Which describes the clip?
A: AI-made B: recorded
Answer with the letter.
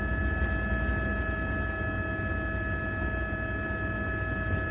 B